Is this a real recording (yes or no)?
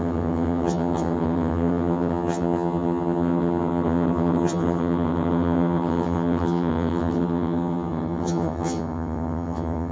no